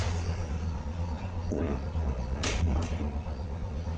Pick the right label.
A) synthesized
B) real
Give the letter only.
A